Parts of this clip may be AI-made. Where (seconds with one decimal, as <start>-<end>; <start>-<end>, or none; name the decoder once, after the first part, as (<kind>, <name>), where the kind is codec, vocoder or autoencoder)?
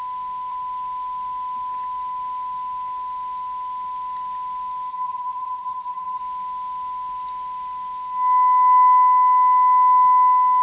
4.9-6.2 (vocoder, HiFi-GAN)